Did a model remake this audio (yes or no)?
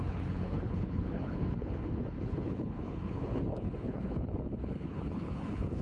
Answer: yes